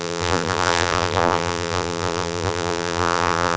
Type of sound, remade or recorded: remade